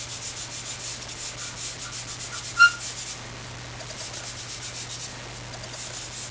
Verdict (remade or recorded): recorded